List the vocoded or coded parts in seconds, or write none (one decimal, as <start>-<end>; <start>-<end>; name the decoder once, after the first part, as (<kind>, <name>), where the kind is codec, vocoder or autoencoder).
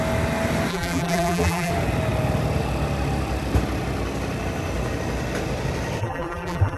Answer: 0.7-1.7 (vocoder, BigVGAN v2); 6.0-6.8